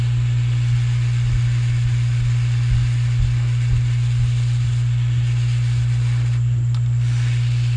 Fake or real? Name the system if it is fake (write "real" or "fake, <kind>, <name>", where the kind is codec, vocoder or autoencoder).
real